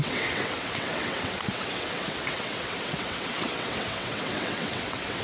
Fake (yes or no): yes